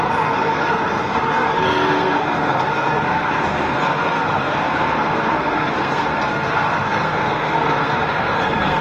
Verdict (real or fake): fake